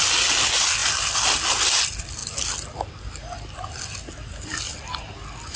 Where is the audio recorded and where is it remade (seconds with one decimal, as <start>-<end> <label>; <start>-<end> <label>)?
0.0-5.6 recorded